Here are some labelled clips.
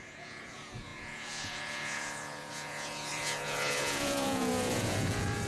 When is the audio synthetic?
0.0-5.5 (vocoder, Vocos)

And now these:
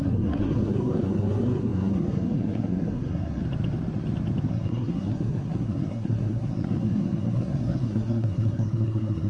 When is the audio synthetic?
0.0-3.4 (codec, SNAC); 4.5-9.3

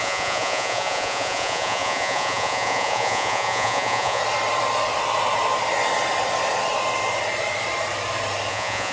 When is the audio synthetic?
0.0-4.2 (vocoder, Vocos); 8.5-8.9

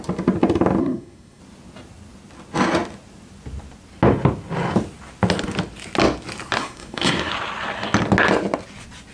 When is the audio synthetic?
0.8-1.4 (codec, SNAC); 6.6-7.3

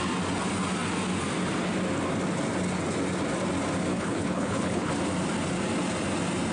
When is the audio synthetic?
3.9-4.9 (codec, HILCodec)